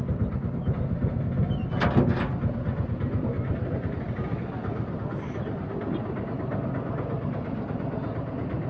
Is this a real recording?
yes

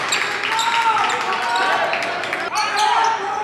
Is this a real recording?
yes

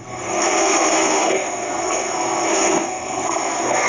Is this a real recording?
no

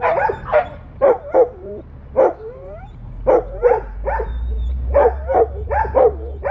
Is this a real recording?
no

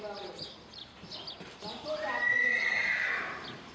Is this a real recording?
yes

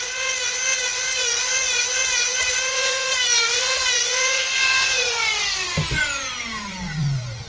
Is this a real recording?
no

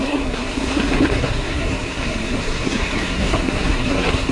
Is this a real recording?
no